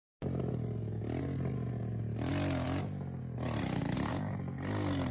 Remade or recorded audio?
recorded